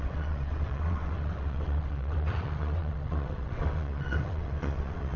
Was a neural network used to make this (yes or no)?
yes